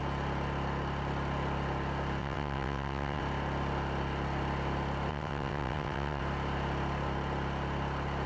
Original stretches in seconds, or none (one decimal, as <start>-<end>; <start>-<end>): 0.0-2.2; 3.2-5.1; 6.2-8.3

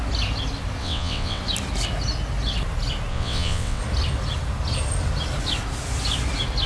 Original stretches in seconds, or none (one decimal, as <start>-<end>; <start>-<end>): 0.0-0.8; 1.4-3.1; 3.8-6.7

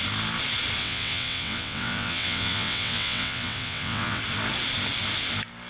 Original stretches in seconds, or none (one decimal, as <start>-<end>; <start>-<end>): 0.0-0.8; 4.2-5.7

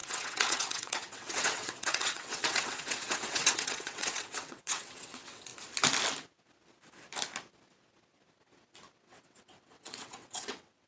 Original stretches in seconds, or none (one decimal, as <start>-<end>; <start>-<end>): 5.5-9.0

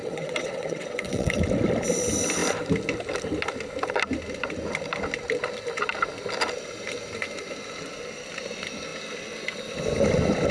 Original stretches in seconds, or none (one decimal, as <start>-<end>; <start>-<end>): 1.4-10.5

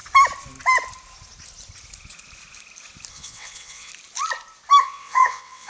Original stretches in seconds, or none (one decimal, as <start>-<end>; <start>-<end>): 0.0-3.1; 3.9-4.8

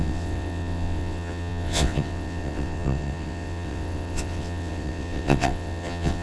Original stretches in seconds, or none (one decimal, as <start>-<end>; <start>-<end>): none

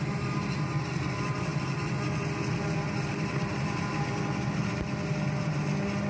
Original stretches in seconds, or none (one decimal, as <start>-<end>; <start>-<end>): 0.0-6.1